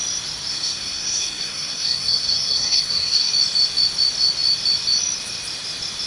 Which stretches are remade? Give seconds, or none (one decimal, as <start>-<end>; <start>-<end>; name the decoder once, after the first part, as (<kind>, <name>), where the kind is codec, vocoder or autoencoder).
0.5-3.3 (codec, SNAC)